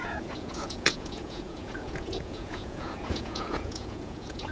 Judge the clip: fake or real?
fake